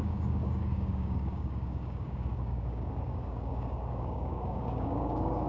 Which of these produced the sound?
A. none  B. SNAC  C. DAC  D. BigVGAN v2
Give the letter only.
C